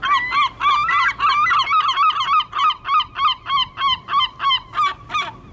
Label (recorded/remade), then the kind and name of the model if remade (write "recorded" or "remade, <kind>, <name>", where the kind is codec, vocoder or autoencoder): recorded